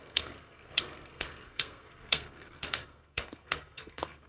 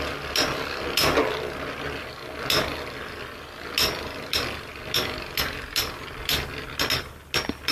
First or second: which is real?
second